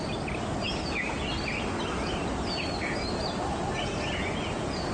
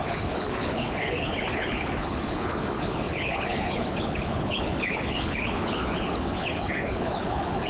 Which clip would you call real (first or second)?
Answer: first